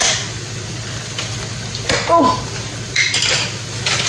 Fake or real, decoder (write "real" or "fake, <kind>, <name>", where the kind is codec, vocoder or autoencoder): real